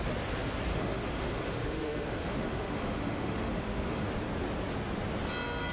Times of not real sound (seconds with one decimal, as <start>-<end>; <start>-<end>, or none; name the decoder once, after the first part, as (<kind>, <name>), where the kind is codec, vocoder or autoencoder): 0.7-4.1 (autoencoder, DAC-VAE)